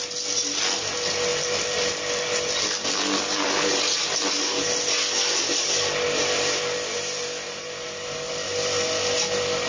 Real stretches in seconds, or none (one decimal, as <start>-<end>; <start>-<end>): 0.0-9.7